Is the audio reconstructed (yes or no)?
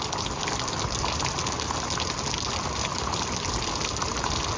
no